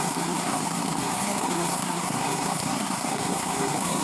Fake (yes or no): yes